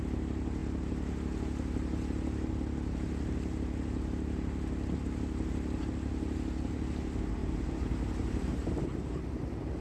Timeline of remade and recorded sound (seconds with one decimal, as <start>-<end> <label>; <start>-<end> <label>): 0.0-7.4 recorded; 7.4-9.1 remade; 9.1-9.8 recorded